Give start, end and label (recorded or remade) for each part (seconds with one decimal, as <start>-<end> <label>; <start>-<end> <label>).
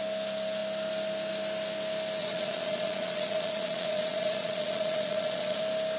0.0-2.2 recorded; 2.2-5.6 remade; 5.6-6.0 recorded